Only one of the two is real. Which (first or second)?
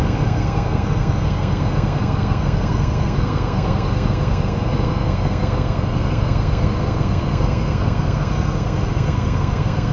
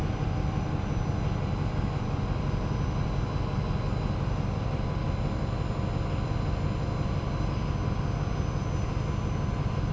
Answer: second